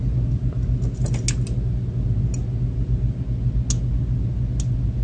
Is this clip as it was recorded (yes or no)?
yes